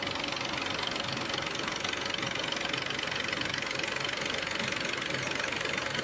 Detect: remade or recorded recorded